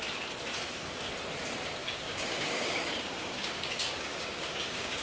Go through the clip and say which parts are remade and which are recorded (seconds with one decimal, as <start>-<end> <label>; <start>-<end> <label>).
0.0-1.8 recorded; 1.8-5.0 remade